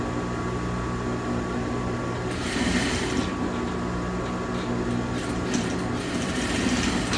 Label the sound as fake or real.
real